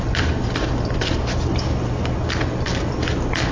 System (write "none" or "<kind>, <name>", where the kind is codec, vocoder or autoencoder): none